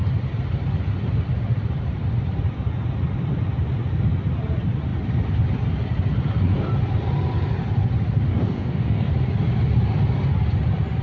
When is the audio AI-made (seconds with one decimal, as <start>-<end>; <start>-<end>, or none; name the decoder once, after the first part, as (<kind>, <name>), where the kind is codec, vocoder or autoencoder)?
8.3-9.1 (codec, DAC)